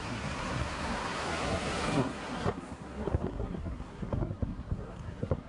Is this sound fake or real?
fake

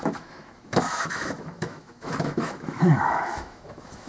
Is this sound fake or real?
fake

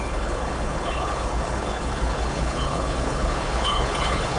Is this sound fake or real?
fake